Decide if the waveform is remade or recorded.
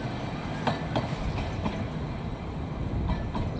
recorded